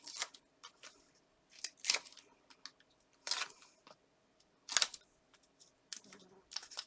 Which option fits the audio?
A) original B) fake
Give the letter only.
A